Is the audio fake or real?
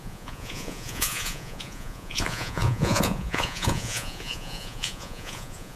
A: fake